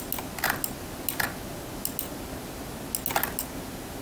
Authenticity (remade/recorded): recorded